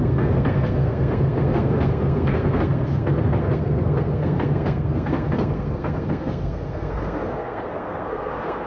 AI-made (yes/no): yes